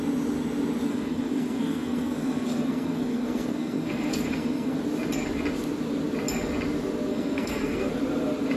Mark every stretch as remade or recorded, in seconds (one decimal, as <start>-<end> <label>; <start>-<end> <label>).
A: 0.0-0.9 recorded; 0.9-4.8 remade; 4.8-7.1 recorded; 7.1-7.9 remade; 7.9-8.6 recorded